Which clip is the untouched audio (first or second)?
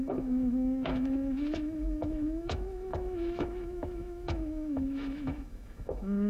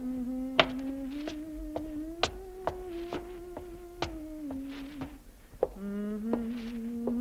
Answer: second